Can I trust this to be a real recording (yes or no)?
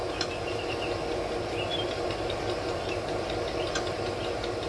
yes